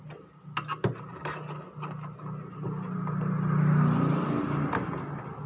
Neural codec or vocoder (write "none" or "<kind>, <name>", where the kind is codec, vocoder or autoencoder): none